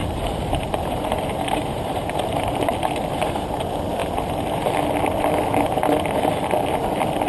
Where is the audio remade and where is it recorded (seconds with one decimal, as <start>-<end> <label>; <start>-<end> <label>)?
0.0-2.1 remade; 2.1-4.0 recorded; 4.0-4.7 remade; 4.7-7.3 recorded